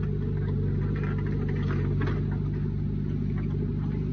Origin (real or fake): real